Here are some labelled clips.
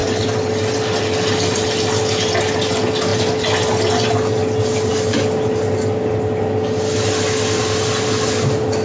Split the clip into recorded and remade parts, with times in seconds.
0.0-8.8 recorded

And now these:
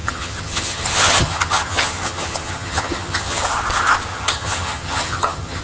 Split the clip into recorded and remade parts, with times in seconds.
0.0-3.4 remade; 3.4-4.1 recorded; 4.1-5.6 remade

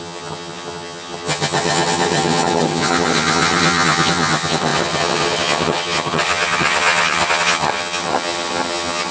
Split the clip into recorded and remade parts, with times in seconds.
0.0-9.1 remade

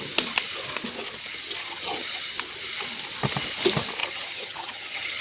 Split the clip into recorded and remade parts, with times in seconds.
0.0-1.6 recorded; 1.6-2.3 remade; 2.3-4.0 recorded; 4.0-5.2 remade